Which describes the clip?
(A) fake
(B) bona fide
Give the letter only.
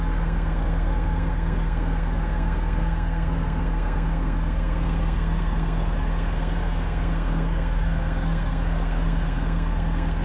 A